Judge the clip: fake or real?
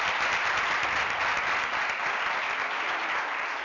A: real